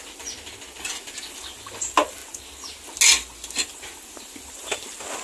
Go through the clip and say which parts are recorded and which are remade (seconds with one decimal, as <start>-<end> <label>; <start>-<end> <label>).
0.0-5.2 recorded